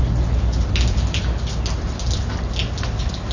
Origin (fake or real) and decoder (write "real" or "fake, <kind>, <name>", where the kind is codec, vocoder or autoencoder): real